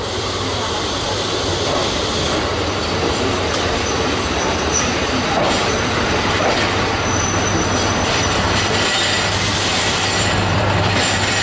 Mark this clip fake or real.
fake